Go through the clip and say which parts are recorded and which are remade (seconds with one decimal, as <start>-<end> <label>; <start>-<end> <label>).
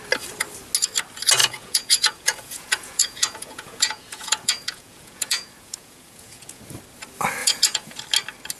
0.0-1.4 recorded; 1.4-6.6 remade; 6.6-7.4 recorded; 7.4-8.0 remade; 8.0-8.6 recorded